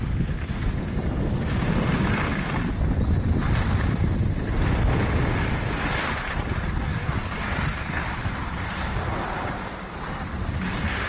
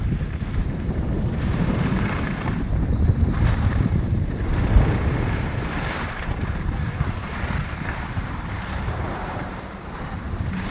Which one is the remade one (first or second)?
second